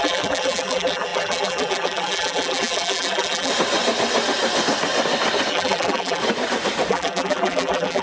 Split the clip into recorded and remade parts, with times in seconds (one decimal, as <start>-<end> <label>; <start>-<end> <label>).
0.0-3.5 remade; 3.5-5.5 recorded; 5.5-6.2 remade; 6.2-6.9 recorded; 6.9-8.0 remade